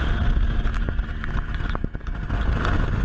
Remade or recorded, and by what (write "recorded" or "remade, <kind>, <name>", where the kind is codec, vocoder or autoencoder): recorded